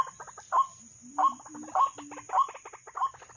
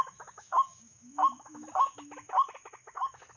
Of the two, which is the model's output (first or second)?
second